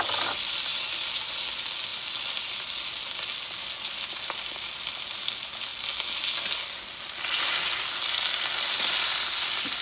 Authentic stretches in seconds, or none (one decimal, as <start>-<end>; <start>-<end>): 0.0-9.8